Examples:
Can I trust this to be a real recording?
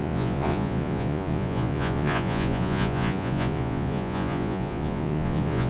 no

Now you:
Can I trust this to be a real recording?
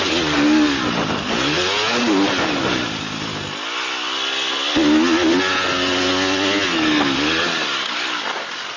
yes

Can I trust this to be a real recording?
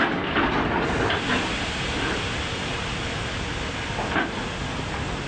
yes